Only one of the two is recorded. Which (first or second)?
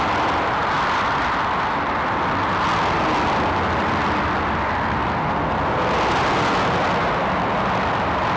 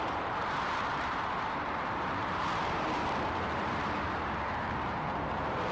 first